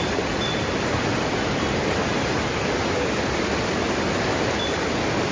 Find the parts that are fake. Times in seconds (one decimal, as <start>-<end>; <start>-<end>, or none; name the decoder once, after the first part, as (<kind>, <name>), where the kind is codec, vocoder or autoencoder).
2.1-3.6 (vocoder, BigVGAN v2)